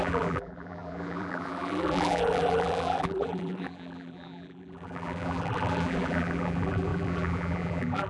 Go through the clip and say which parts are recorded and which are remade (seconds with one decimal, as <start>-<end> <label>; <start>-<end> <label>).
0.0-8.1 remade